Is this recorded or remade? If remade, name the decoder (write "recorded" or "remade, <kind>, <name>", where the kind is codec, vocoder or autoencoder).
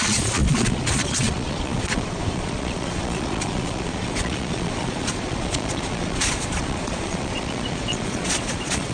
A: remade, vocoder, Vocos